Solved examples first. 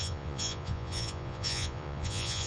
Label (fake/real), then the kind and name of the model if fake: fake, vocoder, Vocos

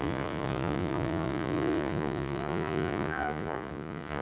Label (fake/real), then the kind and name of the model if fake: fake, vocoder, Vocos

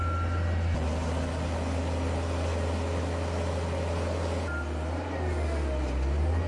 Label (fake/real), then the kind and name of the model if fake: real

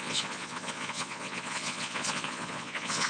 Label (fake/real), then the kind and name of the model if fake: fake, vocoder, Vocos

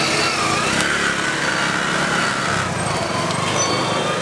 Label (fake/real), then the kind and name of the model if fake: real